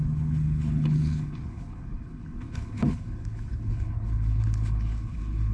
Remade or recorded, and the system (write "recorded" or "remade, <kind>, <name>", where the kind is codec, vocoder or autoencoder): remade, codec, HILCodec